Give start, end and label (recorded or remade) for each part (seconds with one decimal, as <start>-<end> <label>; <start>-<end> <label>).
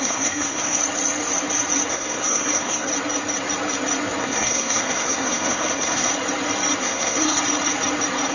0.0-0.8 remade; 0.8-1.9 recorded; 1.9-2.9 remade; 2.9-4.2 recorded; 4.2-6.1 remade; 6.1-6.8 recorded; 6.8-7.4 remade; 7.4-8.3 recorded